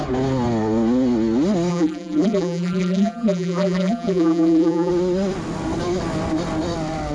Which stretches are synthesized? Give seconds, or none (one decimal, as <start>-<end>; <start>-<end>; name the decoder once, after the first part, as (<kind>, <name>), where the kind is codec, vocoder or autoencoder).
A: 1.7-4.9 (vocoder, BigVGAN v2)